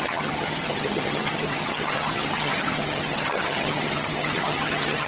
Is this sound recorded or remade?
remade